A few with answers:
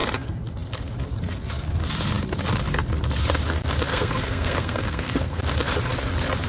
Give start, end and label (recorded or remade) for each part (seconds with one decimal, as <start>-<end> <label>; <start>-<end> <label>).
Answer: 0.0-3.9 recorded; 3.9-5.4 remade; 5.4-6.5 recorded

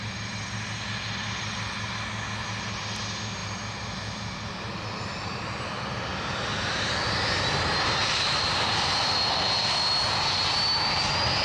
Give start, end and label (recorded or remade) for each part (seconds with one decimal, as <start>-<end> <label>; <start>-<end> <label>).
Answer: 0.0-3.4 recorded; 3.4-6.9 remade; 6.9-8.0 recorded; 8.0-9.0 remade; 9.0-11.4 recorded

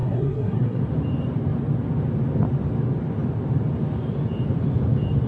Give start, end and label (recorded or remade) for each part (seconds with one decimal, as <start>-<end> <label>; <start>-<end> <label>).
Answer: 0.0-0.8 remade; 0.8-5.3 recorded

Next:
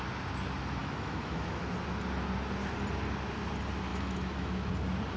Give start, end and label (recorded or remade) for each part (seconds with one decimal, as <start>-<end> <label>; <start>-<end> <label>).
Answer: 0.0-0.8 recorded; 0.8-1.6 remade; 1.6-3.9 recorded; 3.9-4.7 remade; 4.7-5.2 recorded

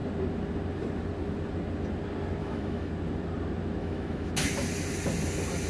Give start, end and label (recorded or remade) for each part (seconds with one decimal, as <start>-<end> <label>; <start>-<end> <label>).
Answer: 0.0-2.4 recorded; 2.4-2.9 remade; 2.9-3.8 recorded; 3.8-4.3 remade; 4.3-5.7 recorded